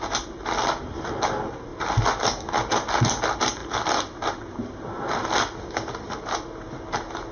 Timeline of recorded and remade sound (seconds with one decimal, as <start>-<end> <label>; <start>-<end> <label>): 0.0-3.6 recorded; 3.6-5.9 remade; 5.9-7.3 recorded